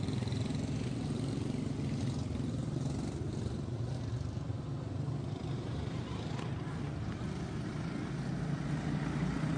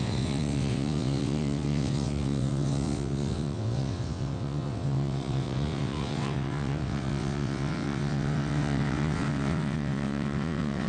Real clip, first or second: first